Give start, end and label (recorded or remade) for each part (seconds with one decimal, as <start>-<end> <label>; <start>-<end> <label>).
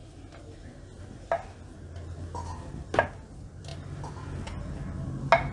0.0-5.5 recorded